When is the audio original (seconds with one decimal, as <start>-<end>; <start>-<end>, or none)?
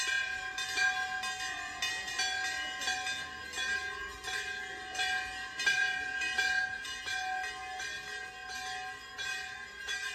0.0-5.8; 7.0-10.1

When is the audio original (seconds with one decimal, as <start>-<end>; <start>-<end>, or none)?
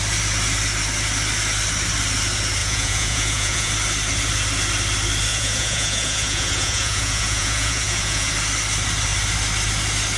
0.0-2.6; 3.7-5.3; 8.3-10.2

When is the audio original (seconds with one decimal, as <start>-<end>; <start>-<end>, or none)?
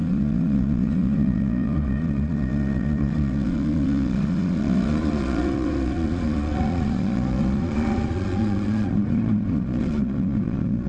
none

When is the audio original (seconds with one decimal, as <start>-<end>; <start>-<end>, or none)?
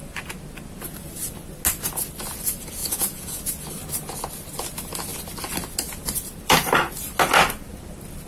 0.0-2.8; 3.4-8.3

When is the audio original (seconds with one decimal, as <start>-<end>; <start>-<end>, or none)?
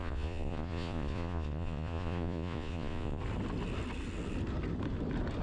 3.2-5.4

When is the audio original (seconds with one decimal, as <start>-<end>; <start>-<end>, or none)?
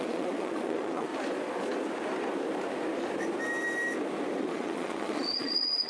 1.1-4.4